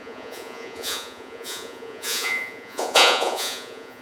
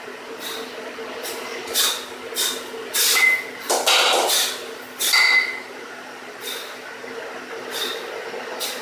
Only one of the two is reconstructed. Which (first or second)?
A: first